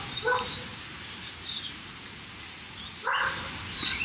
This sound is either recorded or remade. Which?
remade